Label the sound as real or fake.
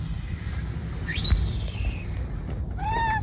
real